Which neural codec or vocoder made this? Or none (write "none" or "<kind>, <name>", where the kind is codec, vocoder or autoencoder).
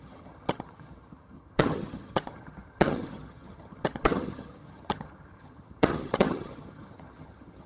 vocoder, HiFi-GAN